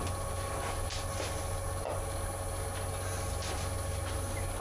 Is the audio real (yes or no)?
yes